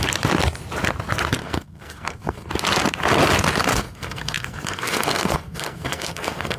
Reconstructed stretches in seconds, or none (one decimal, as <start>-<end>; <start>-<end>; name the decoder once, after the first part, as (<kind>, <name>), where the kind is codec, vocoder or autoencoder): 1.4-2.5 (codec, SNAC); 3.7-6.6